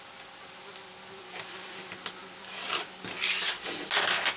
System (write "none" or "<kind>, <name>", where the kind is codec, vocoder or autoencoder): none